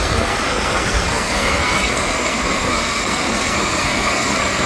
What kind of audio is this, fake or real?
fake